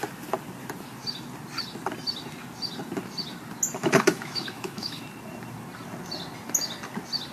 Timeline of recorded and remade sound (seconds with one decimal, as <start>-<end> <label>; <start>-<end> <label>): 0.0-3.8 recorded; 3.8-5.0 remade; 5.0-7.3 recorded